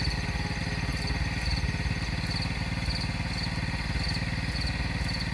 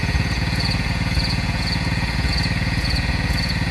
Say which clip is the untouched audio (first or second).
first